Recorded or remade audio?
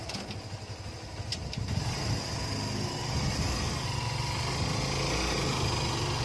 recorded